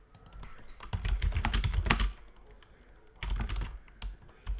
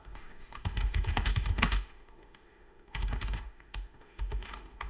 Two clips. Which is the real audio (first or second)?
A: first